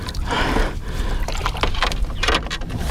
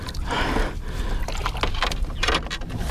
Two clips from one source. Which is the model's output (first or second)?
first